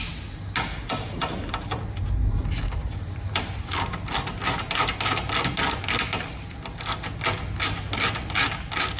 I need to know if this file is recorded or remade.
recorded